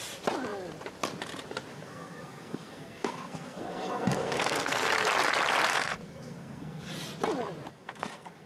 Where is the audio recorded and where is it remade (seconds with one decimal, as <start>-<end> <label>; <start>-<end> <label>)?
0.0-1.7 recorded; 1.7-4.9 remade; 4.9-5.7 recorded; 5.7-6.9 remade; 6.9-7.7 recorded; 7.7-8.5 remade

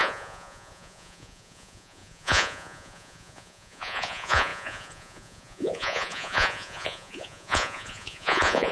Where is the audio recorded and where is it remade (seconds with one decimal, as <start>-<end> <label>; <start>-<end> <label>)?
0.0-8.7 remade

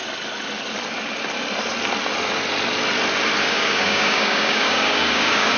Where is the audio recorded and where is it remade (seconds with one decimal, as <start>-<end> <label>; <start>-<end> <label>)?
0.0-3.4 recorded; 3.4-5.6 remade